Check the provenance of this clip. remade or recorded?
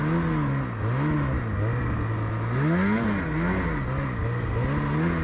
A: recorded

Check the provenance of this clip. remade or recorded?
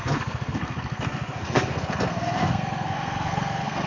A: remade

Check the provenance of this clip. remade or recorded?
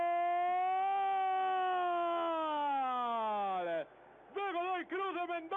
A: recorded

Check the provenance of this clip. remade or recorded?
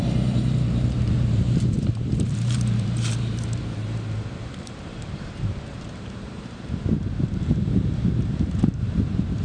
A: remade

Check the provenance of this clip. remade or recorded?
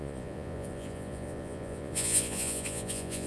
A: remade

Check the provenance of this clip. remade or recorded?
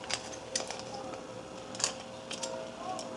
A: recorded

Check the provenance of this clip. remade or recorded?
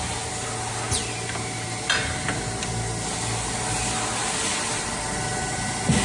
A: recorded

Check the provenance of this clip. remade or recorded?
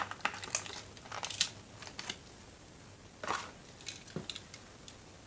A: recorded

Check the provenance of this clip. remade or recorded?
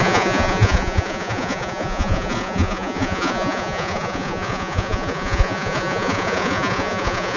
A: remade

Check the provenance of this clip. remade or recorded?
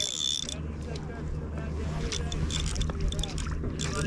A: recorded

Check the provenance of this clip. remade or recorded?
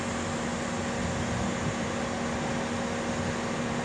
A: recorded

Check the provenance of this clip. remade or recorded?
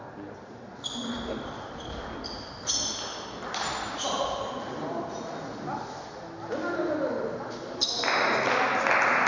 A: recorded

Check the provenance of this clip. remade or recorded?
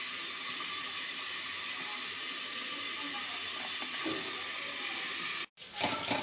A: recorded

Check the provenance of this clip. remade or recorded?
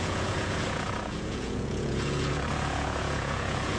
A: remade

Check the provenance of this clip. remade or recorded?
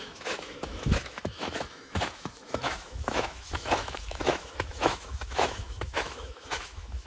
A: remade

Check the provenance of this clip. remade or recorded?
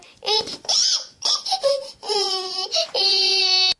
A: remade